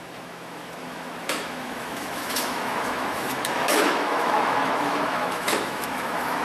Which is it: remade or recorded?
remade